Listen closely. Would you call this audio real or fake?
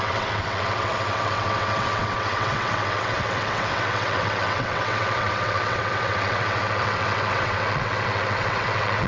fake